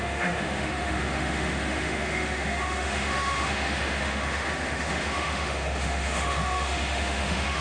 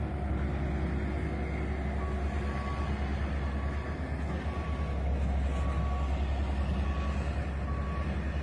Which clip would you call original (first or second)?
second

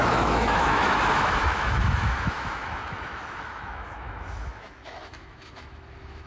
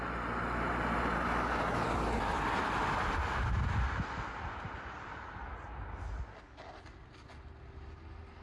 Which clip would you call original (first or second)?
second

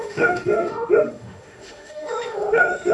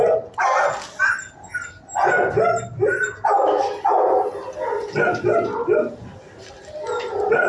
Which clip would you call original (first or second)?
second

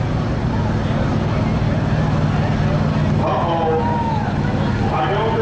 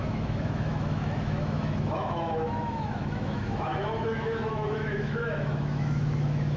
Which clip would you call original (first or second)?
first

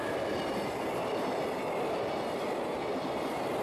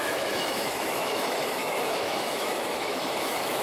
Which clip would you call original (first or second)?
first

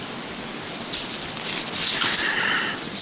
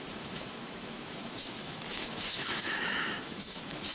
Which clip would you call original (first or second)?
first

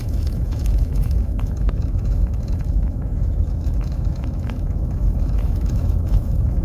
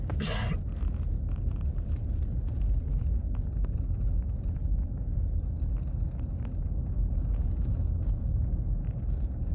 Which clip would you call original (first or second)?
second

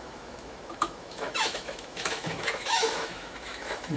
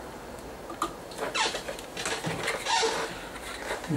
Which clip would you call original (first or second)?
second